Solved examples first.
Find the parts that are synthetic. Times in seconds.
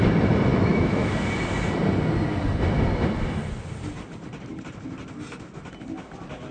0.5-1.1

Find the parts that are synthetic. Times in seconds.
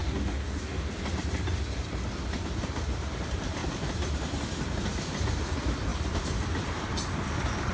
0.0-0.9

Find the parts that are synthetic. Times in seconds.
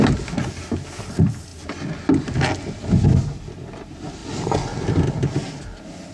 none